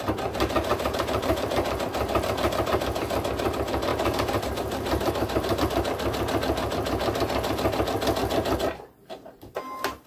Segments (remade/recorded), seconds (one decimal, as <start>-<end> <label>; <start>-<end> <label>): 0.0-0.7 recorded; 0.7-1.5 remade; 1.5-3.9 recorded; 3.9-5.6 remade; 5.6-10.1 recorded